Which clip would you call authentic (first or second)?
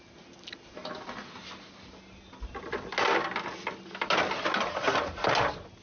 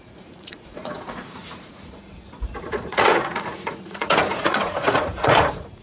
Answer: first